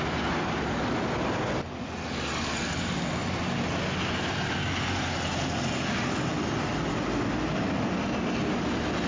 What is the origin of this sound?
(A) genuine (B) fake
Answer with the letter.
A